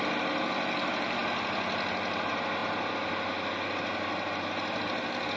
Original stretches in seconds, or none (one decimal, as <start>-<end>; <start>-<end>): 0.0-5.4